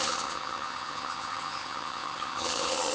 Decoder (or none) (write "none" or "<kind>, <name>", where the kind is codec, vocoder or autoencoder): vocoder, HiFi-GAN